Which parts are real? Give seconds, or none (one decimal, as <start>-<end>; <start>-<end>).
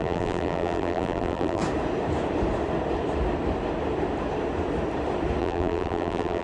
1.6-5.4